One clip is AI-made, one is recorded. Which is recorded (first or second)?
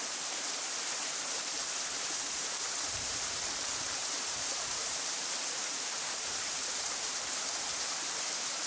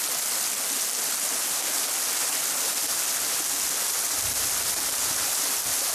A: second